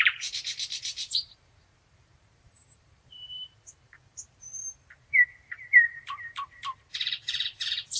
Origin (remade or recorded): remade